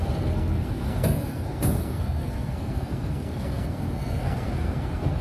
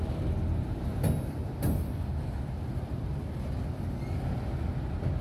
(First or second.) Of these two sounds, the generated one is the first